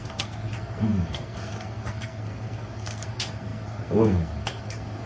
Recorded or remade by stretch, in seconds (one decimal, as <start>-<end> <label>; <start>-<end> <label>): 0.0-5.1 remade